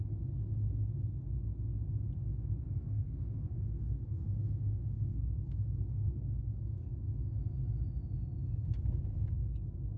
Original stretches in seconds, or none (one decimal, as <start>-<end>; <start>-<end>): 0.0-2.8; 6.9-10.0